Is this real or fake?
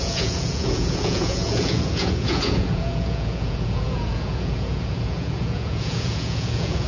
fake